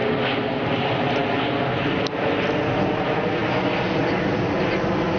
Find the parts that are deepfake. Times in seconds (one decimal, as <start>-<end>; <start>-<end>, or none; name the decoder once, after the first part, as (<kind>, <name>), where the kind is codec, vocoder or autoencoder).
none